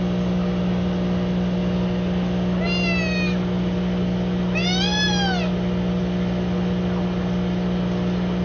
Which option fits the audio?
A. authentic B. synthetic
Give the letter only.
A